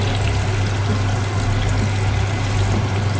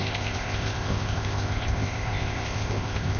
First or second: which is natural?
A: first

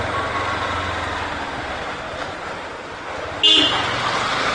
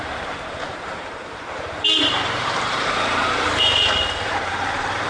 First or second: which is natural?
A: first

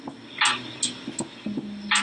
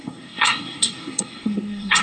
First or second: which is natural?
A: first